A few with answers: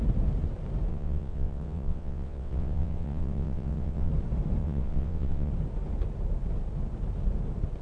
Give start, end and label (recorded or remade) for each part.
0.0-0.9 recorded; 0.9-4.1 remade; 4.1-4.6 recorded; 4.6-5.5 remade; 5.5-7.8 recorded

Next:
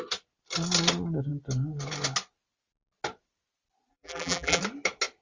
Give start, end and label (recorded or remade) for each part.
0.0-3.9 recorded; 3.9-4.6 remade; 4.6-5.2 recorded

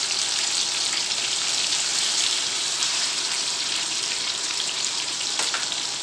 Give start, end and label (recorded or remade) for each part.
0.0-1.9 recorded; 1.9-5.5 remade; 5.5-6.0 recorded

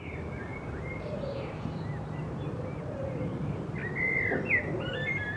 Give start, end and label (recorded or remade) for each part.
0.0-0.5 recorded; 0.5-2.8 remade; 2.8-5.4 recorded

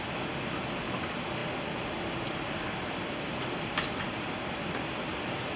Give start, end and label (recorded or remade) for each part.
0.0-5.6 recorded

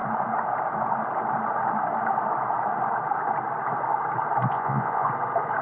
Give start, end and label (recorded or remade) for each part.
0.0-4.5 recorded; 4.5-5.1 remade; 5.1-5.6 recorded